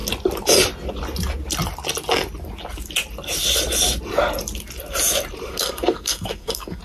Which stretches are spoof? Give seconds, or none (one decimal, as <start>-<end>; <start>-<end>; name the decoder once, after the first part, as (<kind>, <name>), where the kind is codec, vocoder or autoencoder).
5.5-6.8 (codec, SNAC)